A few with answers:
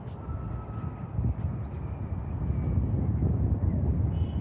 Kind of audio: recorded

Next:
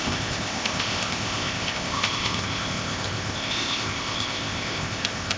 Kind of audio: remade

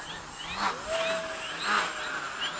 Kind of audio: recorded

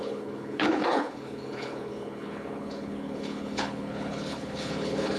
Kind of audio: remade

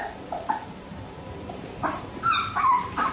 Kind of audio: remade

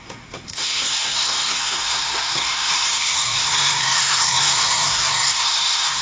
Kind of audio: remade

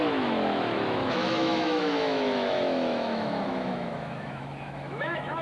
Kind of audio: remade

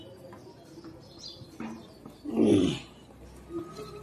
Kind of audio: recorded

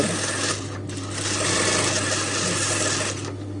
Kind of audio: recorded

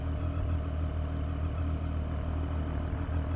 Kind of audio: recorded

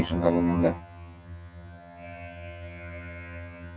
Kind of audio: remade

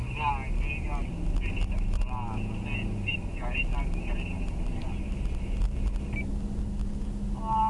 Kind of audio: recorded